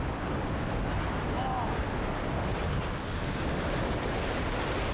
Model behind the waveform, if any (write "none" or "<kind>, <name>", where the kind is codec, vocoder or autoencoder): none